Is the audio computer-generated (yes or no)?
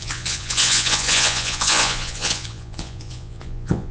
yes